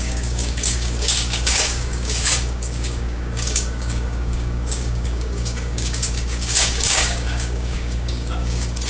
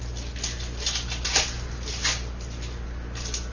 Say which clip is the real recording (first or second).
second